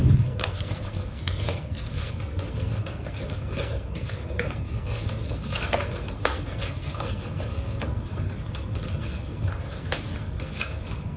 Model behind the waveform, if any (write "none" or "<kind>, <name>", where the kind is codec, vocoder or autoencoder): codec, SNAC